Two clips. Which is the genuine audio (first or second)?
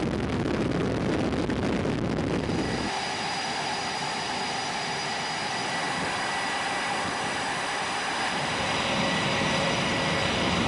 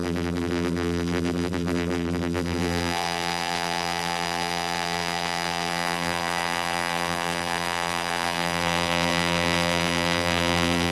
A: first